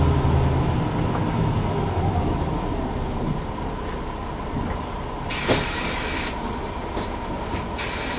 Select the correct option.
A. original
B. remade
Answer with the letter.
A